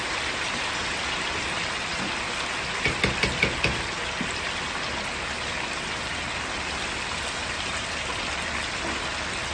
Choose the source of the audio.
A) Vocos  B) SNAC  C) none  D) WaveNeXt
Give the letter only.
C